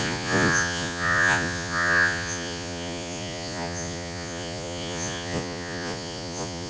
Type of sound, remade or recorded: remade